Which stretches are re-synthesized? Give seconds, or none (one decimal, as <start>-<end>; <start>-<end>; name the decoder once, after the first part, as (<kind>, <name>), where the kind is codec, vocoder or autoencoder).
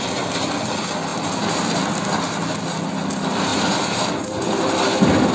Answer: none